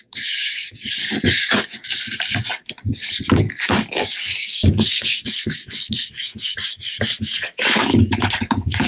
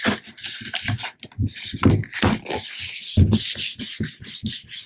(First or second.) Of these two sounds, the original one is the second